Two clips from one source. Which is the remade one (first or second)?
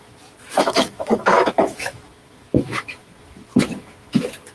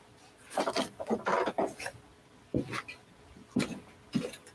first